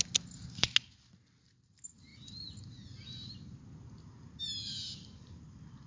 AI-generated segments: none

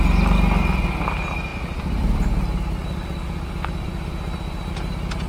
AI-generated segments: 1.5-4.7 (vocoder, BigVGAN v2)

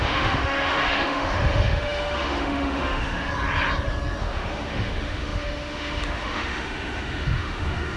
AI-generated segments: 0.0-3.3 (autoencoder, DAC-VAE); 4.2-8.0

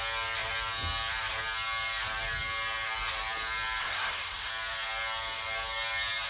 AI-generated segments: 3.8-4.5 (codec, SNAC)

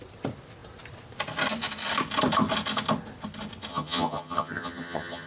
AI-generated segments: 3.7-5.3 (vocoder, HiFi-GAN)